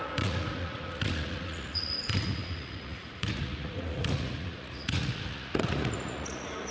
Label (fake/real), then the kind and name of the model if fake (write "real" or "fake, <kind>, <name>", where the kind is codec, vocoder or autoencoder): fake, vocoder, Vocos